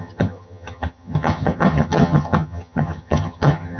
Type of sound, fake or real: fake